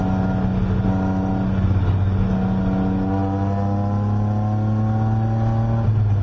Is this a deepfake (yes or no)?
no